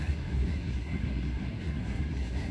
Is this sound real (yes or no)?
no